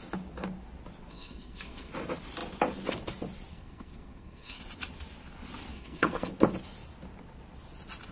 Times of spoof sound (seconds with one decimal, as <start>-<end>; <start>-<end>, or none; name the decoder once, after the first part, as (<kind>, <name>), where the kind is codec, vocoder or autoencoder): 1.1-1.9 (codec, SNAC); 3.5-4.6; 5.7-6.3